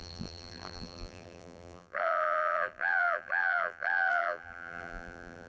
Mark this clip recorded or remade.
remade